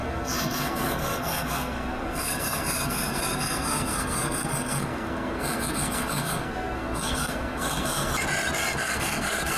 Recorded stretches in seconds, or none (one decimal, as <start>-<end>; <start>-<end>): 8.1-8.8

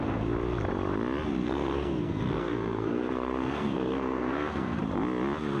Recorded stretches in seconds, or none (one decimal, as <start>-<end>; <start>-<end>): 0.0-1.4; 4.8-5.6